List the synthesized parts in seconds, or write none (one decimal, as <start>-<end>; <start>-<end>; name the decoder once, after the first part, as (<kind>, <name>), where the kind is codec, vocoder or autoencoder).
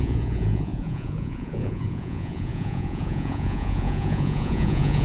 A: 0.0-5.0 (vocoder, Vocos)